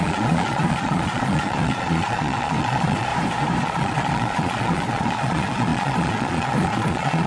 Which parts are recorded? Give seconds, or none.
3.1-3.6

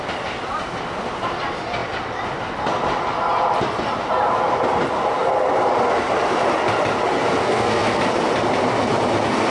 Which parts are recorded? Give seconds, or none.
0.0-7.4; 8.0-9.5

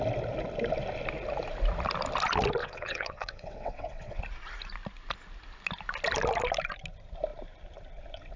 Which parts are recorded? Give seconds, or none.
0.0-2.6; 4.2-8.4

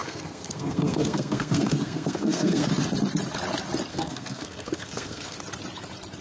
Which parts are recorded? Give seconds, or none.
2.7-3.9; 5.4-6.2